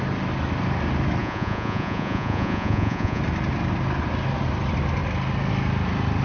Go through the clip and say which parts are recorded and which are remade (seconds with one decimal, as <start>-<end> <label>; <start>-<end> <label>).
0.0-1.2 recorded; 1.2-3.2 remade; 3.2-6.2 recorded